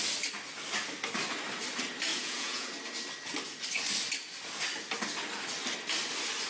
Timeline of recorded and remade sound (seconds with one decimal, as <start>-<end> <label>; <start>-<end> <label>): 0.0-2.1 recorded; 2.1-2.7 remade; 2.7-6.5 recorded